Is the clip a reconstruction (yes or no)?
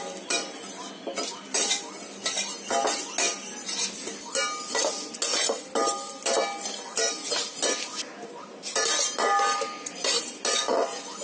no